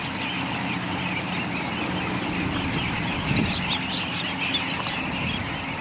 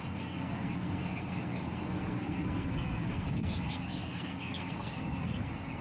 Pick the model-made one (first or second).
second